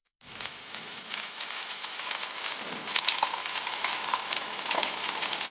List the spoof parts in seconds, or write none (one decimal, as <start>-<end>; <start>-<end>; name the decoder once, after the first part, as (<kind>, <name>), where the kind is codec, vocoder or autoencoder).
0.0-2.1 (autoencoder, DAC-VAE); 3.4-5.1